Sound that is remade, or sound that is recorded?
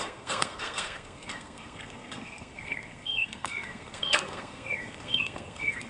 remade